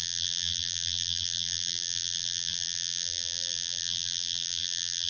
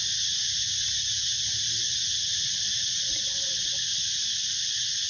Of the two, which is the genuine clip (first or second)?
second